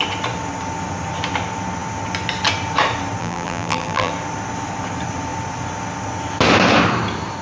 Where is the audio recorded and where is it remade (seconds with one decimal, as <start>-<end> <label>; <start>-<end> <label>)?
0.0-3.2 recorded; 3.2-4.1 remade; 4.1-7.4 recorded